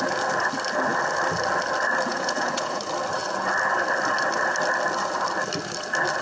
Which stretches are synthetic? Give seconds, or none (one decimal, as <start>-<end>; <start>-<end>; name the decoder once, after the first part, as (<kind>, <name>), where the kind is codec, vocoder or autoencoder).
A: 2.1-2.8 (vocoder, Vocos)